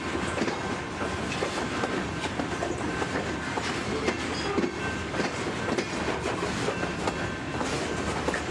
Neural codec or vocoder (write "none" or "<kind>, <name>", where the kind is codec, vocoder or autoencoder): none